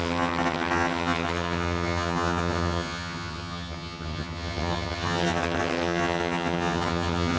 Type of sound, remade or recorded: remade